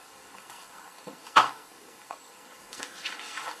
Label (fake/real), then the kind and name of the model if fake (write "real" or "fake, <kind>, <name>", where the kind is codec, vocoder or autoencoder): fake, codec, SNAC